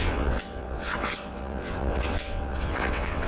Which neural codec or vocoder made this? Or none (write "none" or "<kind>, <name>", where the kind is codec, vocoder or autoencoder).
vocoder, WaveNeXt